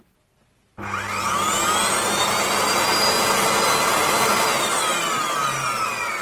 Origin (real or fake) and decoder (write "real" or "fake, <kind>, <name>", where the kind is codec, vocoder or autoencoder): real